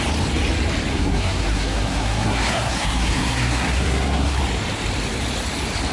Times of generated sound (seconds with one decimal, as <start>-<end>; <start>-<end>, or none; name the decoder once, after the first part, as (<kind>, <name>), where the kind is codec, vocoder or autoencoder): 0.9-4.4 (codec, SNAC)